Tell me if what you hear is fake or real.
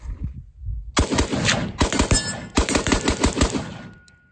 real